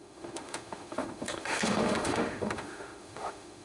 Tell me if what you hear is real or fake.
fake